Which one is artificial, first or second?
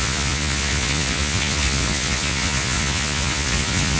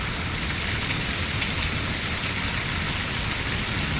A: first